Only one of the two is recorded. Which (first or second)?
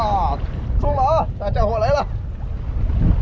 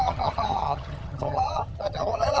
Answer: first